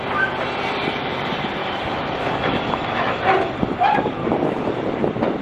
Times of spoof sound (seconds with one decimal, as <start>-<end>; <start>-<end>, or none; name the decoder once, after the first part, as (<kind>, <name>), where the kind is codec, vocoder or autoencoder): 1.6-3.2 (autoencoder, DAC-VAE); 4.2-4.7